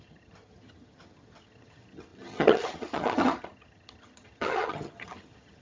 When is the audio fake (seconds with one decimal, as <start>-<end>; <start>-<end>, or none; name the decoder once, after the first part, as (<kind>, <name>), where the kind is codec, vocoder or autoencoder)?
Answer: 0.0-5.6 (vocoder, HiFi-GAN)